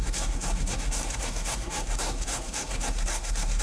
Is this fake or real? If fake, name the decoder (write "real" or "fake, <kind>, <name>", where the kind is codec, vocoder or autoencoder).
fake, codec, SNAC